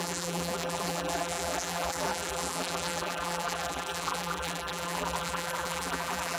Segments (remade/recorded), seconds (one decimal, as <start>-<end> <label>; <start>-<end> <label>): 0.0-6.4 remade